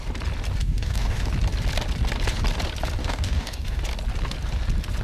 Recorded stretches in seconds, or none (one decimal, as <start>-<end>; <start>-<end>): 0.0-0.6; 1.3-3.0; 3.8-5.0